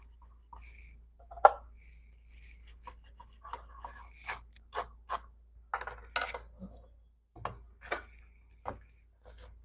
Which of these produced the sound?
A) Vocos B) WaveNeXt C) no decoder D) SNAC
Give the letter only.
C